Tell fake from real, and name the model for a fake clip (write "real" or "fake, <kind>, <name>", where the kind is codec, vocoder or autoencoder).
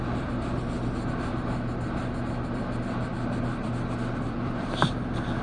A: fake, vocoder, BigVGAN v2